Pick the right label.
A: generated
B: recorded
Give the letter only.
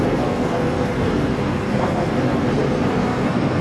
A